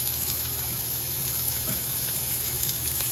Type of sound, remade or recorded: remade